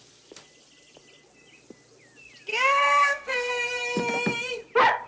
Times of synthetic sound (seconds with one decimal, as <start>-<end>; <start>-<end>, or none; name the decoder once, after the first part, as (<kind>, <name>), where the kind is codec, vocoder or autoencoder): 2.5-3.5 (codec, SNAC)